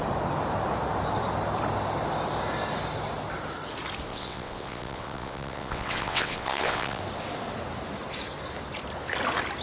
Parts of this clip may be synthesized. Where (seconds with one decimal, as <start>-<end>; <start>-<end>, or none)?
4.1-7.0

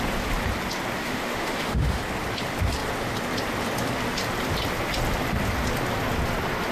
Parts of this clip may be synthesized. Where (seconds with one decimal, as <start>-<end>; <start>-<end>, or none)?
1.0-2.0

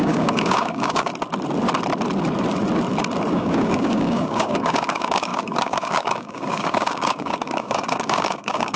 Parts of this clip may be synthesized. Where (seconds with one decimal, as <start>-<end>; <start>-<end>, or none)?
0.0-1.1; 3.3-8.8

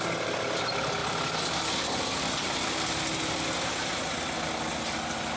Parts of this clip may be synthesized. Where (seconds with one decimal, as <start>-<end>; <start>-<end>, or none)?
none

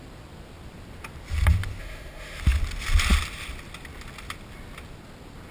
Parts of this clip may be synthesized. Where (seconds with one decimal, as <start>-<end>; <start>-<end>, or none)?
1.8-2.4

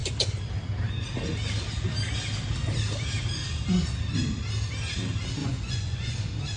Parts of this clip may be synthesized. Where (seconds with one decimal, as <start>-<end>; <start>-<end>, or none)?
5.4-6.1